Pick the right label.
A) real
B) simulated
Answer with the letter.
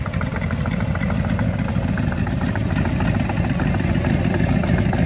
B